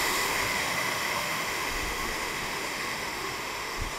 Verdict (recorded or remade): remade